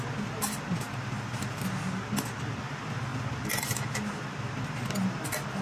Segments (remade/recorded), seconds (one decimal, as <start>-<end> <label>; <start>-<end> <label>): 0.0-5.6 recorded